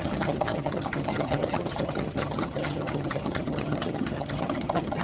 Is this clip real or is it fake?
fake